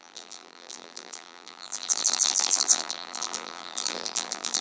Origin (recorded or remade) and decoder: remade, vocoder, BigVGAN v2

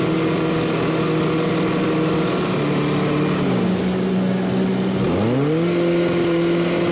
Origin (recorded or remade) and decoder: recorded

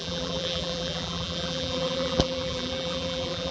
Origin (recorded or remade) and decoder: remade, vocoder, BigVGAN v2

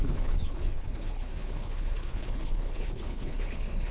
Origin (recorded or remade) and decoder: remade, codec, HILCodec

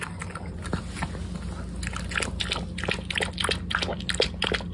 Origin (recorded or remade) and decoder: recorded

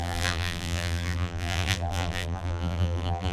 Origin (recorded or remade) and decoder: remade, vocoder, BigVGAN v2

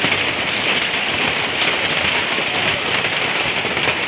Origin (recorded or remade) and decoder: recorded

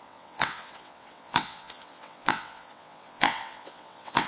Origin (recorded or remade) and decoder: remade, vocoder, WaveNeXt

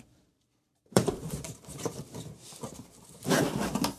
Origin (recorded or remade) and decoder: remade, vocoder, BigVGAN v2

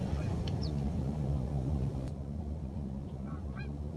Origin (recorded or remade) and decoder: remade, vocoder, Vocos